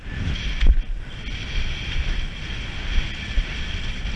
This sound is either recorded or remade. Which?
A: recorded